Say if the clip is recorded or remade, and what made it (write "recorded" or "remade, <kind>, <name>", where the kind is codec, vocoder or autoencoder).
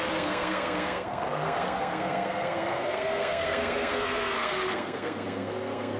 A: remade, codec, SNAC